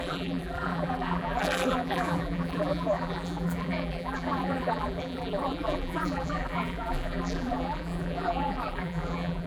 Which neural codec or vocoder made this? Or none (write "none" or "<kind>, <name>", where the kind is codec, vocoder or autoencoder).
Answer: vocoder, BigVGAN v2